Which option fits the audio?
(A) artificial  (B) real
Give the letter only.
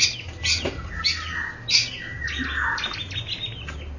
B